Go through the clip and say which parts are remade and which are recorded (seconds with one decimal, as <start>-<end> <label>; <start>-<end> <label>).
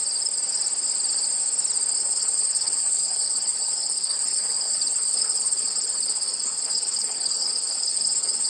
0.0-2.0 recorded; 2.0-8.5 remade